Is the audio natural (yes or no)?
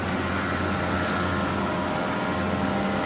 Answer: yes